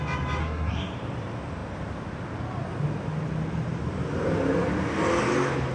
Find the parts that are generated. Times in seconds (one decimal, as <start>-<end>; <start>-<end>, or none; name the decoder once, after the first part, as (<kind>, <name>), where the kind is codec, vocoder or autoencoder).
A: 0.4-0.9 (codec, SNAC)